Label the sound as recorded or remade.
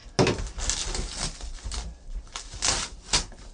recorded